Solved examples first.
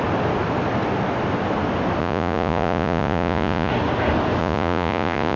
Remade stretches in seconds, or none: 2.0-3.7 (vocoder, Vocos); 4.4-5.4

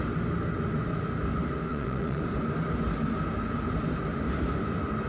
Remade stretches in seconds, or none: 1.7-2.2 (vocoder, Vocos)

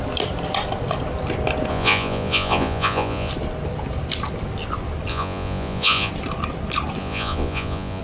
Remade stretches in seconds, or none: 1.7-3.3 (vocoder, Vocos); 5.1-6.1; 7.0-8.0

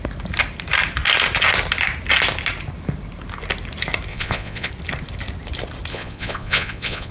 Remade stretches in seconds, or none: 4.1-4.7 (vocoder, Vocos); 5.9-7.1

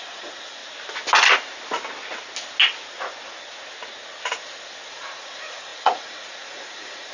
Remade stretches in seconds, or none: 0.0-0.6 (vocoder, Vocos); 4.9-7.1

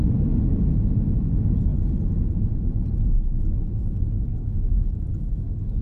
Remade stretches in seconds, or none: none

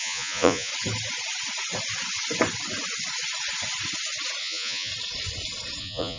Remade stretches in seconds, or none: 0.0-0.7 (vocoder, Vocos); 4.4-4.9; 5.8-6.2